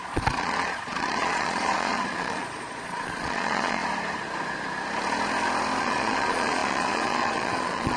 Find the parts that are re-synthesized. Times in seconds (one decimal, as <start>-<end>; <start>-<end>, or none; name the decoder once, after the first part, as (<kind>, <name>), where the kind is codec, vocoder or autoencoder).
0.0-3.8 (vocoder, Vocos); 5.8-8.0